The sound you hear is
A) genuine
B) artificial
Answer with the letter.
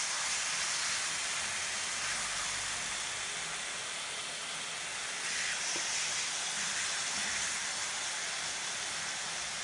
A